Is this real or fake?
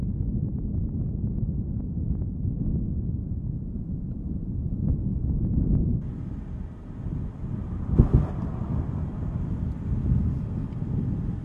real